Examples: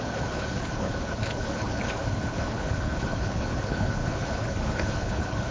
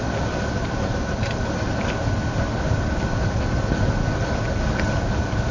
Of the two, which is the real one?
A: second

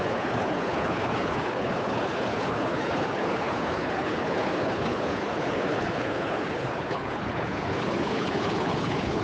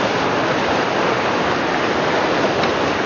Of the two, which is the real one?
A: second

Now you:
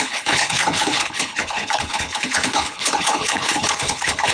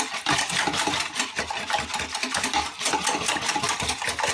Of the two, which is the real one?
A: second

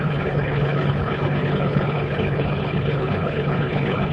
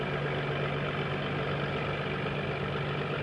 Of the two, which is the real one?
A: second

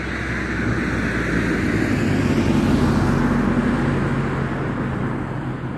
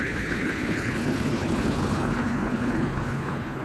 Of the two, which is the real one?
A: first